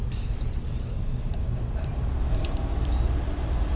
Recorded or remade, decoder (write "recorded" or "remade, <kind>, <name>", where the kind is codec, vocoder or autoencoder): remade, vocoder, BigVGAN v2